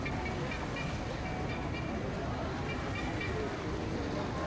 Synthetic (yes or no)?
no